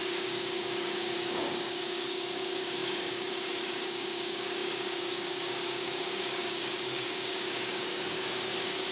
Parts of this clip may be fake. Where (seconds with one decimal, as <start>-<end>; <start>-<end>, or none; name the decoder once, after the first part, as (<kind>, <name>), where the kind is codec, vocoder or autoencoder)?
0.0-8.9 (codec, DAC)